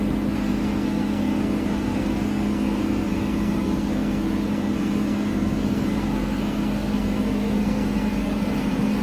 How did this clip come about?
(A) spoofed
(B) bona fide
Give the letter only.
A